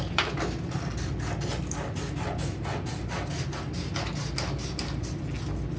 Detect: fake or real real